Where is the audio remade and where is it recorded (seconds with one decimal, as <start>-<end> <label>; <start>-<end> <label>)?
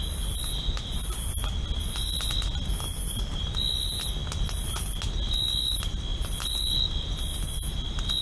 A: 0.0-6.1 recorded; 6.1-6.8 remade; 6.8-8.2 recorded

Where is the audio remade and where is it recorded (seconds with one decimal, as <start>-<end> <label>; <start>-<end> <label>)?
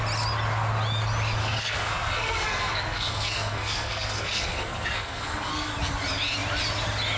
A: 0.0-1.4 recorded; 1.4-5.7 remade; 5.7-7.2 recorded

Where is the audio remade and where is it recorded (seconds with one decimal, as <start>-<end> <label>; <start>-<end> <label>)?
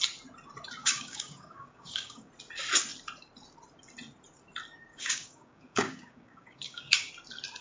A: 0.0-0.8 recorded; 0.8-2.3 remade; 2.3-4.9 recorded; 4.9-7.1 remade; 7.1-7.6 recorded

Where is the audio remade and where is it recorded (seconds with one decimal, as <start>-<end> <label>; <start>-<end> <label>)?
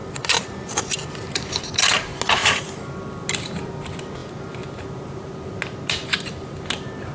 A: 0.0-7.1 recorded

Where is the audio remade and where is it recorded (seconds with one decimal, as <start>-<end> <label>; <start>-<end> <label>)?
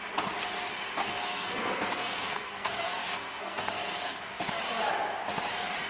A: 0.0-1.0 recorded; 1.0-4.5 remade; 4.5-5.9 recorded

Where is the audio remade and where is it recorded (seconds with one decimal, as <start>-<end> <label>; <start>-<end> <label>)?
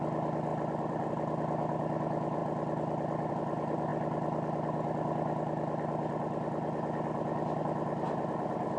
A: 0.0-0.5 recorded; 0.5-1.1 remade; 1.1-8.8 recorded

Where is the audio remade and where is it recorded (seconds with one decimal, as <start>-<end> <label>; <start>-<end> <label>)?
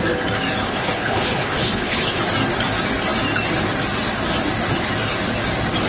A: 0.0-0.6 recorded; 0.6-2.2 remade; 2.2-5.9 recorded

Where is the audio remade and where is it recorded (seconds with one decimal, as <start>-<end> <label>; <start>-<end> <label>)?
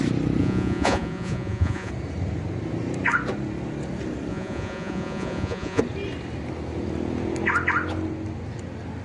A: 0.0-0.4 recorded; 0.4-1.9 remade; 1.9-4.3 recorded; 4.3-5.8 remade; 5.8-9.0 recorded